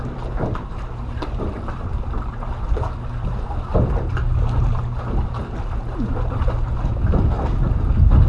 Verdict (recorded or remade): recorded